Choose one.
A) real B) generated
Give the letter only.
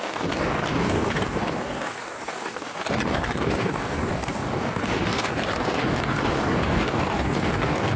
B